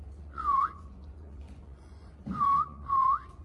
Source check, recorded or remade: remade